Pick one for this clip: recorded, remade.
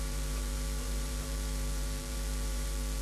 remade